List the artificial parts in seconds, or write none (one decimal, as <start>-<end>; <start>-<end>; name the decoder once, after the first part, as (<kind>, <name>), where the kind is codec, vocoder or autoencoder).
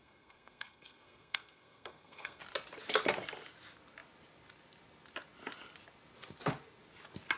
0.0-2.4 (codec, SNAC)